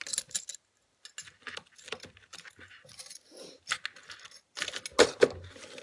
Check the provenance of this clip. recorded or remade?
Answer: recorded